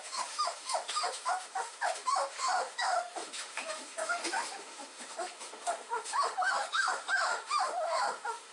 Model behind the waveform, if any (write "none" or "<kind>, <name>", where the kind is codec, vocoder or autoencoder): autoencoder, DAC-VAE